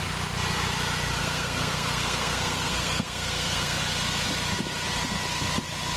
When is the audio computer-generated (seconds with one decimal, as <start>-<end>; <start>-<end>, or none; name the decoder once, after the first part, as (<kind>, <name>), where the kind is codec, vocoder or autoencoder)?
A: 1.2-3.8 (codec, SNAC)